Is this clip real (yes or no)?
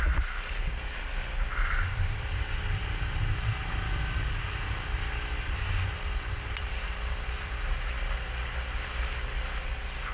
yes